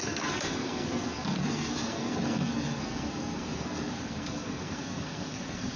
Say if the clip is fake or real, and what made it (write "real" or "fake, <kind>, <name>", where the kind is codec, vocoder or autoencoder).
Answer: fake, codec, SNAC